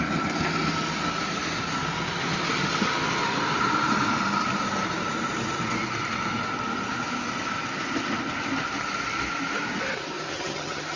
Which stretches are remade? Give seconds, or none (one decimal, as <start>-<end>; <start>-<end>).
10.3-11.0